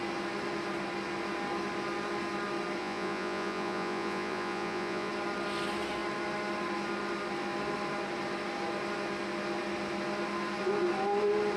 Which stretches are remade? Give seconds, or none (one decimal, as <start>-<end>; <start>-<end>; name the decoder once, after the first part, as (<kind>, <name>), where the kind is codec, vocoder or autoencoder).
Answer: 2.8-5.1 (vocoder, Vocos)